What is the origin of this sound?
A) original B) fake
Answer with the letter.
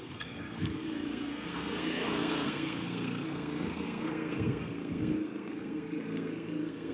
B